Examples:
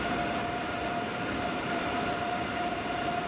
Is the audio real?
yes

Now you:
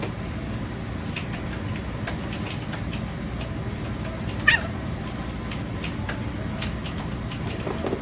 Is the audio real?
yes